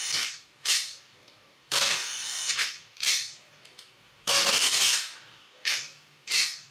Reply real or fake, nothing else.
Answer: fake